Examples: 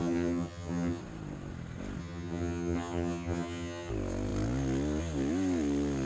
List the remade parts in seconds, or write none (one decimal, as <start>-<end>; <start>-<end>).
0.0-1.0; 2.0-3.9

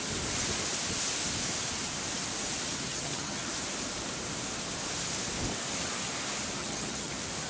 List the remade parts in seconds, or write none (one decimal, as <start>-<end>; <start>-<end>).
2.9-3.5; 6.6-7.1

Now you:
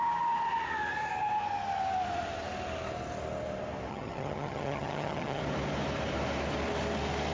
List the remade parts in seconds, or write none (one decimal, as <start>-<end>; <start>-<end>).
3.9-5.4